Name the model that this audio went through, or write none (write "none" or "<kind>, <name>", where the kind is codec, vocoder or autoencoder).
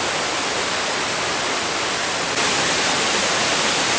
none